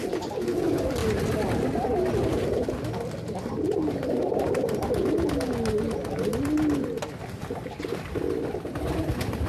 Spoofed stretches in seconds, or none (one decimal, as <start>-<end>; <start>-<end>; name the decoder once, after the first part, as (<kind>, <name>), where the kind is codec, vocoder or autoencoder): 1.0-4.5 (vocoder, BigVGAN v2); 6.3-7.0